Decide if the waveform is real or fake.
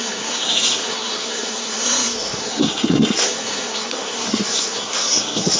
fake